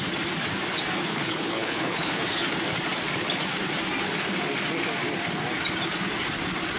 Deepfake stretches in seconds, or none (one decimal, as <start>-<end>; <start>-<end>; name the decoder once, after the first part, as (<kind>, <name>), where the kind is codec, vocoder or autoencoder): 1.1-2.1 (codec, HILCodec)